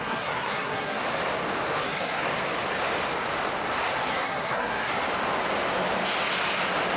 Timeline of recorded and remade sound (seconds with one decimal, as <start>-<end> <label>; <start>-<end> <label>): 0.0-1.0 remade; 1.0-1.8 recorded; 1.8-2.2 remade; 2.2-4.1 recorded; 4.1-4.9 remade; 4.9-7.0 recorded